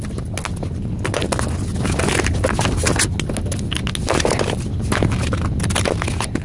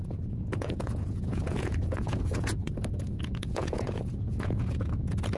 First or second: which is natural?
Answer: first